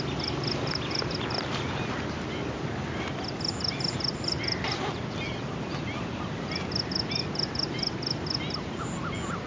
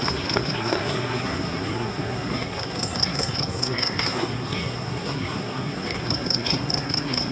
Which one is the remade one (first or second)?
second